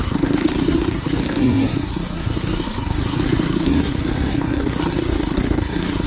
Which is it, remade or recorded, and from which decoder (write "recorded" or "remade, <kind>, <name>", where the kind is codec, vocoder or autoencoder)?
remade, codec, SNAC